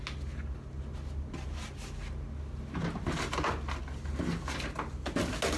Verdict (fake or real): real